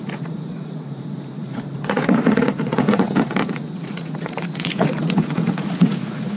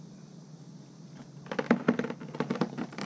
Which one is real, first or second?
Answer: second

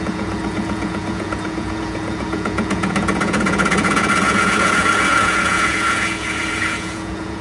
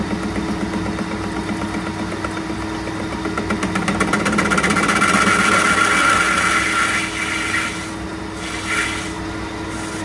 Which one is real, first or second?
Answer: second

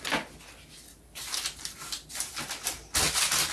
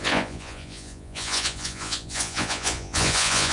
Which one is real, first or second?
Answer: first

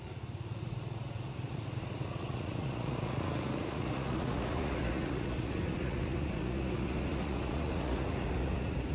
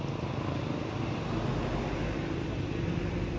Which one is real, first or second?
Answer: second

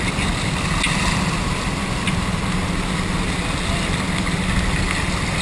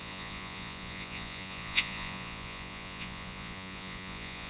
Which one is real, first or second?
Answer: first